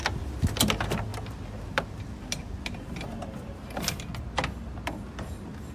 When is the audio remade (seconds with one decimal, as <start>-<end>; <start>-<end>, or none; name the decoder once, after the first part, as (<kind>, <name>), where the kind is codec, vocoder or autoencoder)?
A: none